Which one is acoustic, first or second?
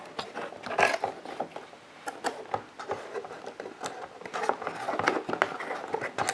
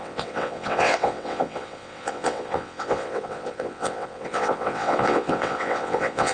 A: first